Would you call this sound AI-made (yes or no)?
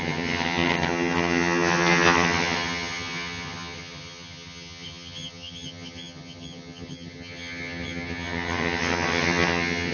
yes